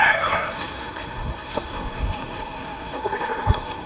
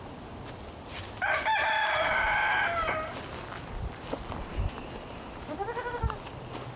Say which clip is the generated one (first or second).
first